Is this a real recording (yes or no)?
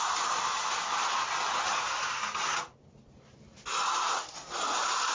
yes